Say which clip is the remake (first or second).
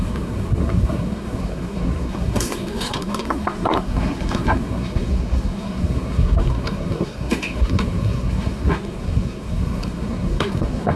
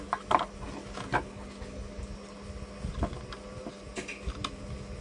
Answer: first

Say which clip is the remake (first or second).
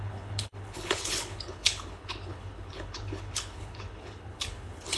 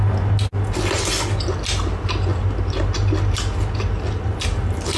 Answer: first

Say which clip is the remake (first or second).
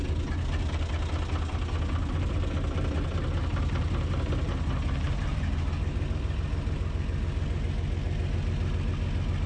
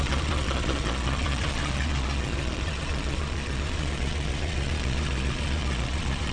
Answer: second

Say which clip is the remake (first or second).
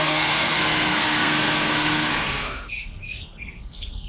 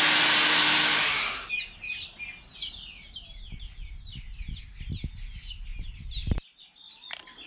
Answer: first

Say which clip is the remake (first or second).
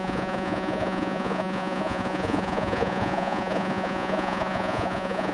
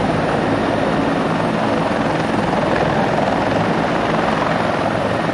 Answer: first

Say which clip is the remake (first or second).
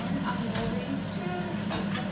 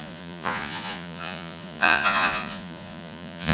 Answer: second